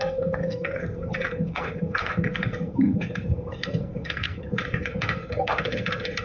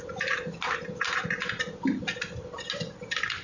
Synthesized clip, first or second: first